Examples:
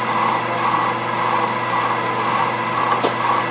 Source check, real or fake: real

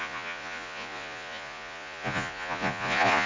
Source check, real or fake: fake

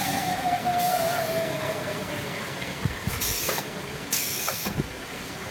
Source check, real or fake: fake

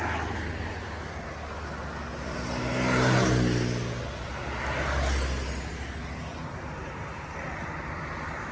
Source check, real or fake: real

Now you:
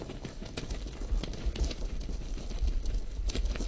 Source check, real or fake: real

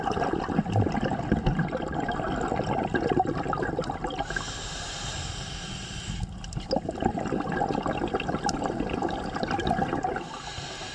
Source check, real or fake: real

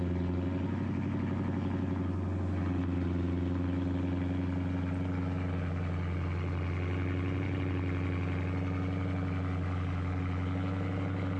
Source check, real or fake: real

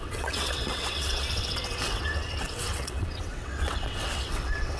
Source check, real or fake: fake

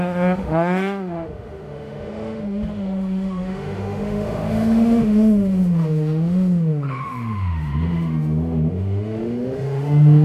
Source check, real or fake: fake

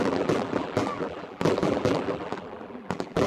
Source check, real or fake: fake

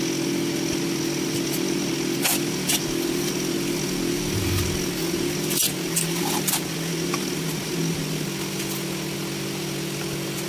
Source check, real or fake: real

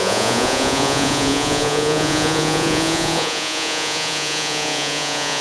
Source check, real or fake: fake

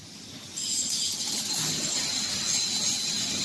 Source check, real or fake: real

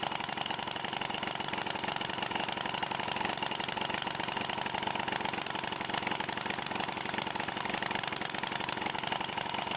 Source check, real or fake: fake